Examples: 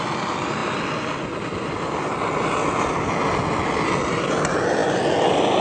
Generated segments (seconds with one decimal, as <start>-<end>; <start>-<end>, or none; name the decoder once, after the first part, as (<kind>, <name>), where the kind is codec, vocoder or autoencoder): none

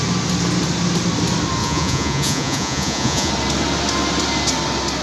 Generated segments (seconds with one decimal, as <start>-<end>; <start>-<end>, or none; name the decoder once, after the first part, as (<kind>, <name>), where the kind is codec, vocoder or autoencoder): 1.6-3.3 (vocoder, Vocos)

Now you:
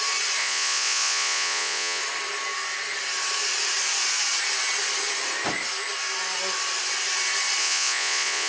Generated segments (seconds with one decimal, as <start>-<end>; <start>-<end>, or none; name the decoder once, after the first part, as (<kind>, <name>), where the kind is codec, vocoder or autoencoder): 0.4-2.0 (vocoder, Vocos); 7.6-8.5

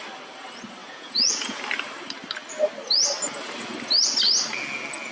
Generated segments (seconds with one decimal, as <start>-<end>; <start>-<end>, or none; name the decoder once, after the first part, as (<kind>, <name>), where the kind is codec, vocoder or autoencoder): 0.8-1.6 (vocoder, Vocos)